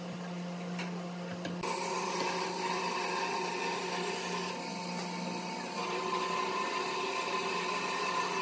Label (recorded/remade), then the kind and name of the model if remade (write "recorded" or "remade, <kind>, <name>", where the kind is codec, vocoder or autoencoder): recorded